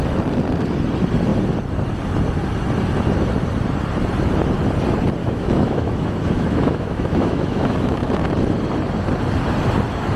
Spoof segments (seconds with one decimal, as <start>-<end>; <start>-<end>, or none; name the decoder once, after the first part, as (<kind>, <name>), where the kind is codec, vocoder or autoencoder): 5.2-8.1 (autoencoder, DAC-VAE)